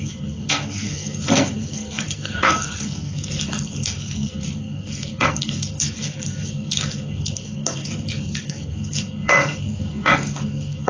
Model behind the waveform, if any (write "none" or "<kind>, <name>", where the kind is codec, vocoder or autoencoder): codec, SNAC